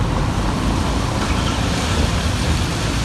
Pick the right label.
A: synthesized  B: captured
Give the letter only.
B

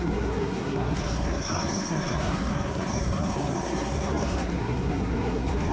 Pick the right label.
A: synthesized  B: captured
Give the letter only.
A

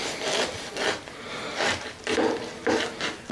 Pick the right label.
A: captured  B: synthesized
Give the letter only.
A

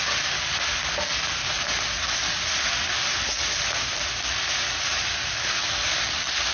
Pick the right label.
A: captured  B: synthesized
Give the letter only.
A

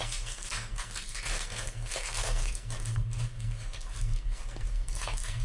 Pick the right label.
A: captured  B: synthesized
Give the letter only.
B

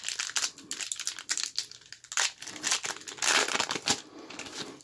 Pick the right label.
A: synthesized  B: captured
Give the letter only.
B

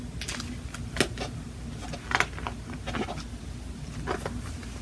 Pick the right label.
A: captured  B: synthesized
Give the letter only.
A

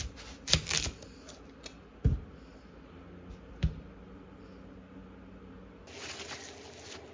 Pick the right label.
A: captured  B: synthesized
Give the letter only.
A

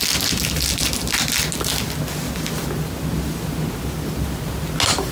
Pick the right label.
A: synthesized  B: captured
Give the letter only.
B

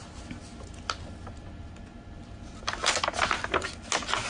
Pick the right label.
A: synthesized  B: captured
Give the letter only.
B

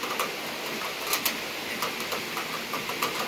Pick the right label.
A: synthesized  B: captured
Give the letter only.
B